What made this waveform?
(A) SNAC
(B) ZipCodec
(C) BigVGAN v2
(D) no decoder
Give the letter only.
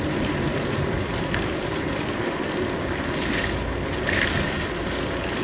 D